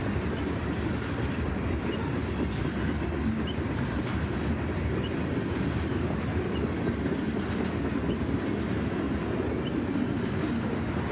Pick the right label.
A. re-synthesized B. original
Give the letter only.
B